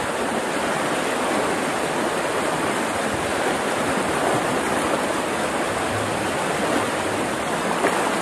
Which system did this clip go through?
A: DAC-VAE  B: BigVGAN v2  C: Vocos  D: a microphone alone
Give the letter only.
D